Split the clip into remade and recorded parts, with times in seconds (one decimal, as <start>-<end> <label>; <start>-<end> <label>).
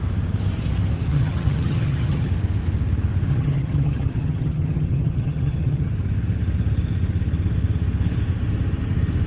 0.0-1.1 recorded; 1.1-2.3 remade; 2.3-3.3 recorded; 3.3-5.9 remade; 5.9-9.3 recorded